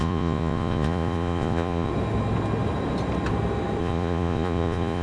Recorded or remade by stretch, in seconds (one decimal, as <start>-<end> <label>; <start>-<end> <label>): 0.0-1.9 remade; 1.9-3.8 recorded; 3.8-5.0 remade